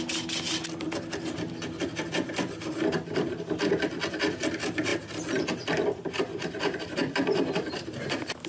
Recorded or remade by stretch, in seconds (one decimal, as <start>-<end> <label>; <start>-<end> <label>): 0.0-8.5 recorded

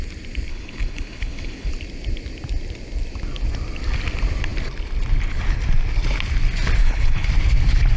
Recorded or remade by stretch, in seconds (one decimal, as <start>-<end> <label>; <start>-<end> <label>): 0.0-0.5 recorded; 0.5-1.7 remade; 1.7-6.8 recorded; 6.8-7.3 remade; 7.3-8.0 recorded

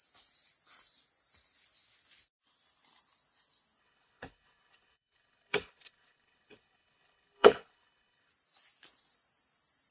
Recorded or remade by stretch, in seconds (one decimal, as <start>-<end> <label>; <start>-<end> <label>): 0.0-3.8 recorded; 3.8-8.3 remade; 8.3-9.9 recorded

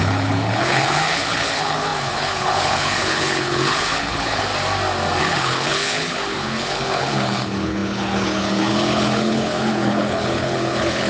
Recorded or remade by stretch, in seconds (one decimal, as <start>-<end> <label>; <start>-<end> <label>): 0.0-4.5 remade; 4.5-5.2 recorded; 5.2-11.1 remade

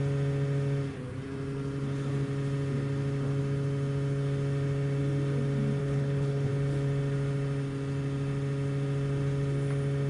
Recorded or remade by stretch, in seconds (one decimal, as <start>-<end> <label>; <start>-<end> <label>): 0.0-5.8 recorded; 5.8-6.5 remade; 6.5-10.1 recorded

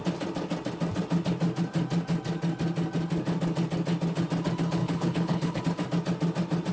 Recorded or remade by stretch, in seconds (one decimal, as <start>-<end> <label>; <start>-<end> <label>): 0.0-4.8 recorded; 4.8-5.6 remade; 5.6-6.7 recorded

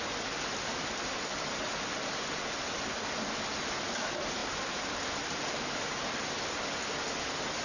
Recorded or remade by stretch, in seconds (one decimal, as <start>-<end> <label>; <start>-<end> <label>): 0.0-7.6 recorded

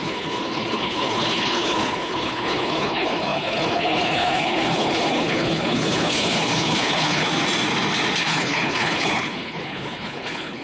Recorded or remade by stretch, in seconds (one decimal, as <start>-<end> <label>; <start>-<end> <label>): 0.0-7.3 remade; 7.3-8.2 recorded; 8.2-10.6 remade